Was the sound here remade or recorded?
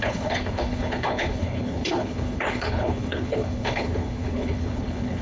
remade